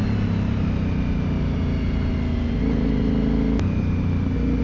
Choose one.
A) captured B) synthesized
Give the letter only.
A